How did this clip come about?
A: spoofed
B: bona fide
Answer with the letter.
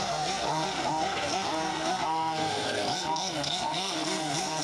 A